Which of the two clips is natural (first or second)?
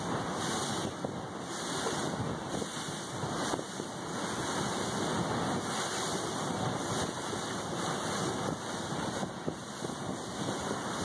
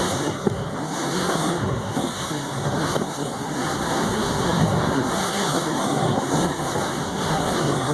first